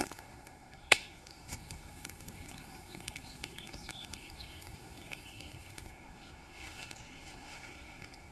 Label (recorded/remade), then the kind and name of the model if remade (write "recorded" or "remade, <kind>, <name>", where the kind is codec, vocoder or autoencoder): remade, codec, SNAC